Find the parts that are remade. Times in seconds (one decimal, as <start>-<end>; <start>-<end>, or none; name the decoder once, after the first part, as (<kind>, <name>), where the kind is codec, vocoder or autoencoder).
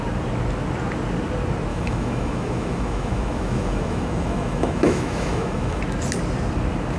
1.7-5.8 (autoencoder, DAC-VAE)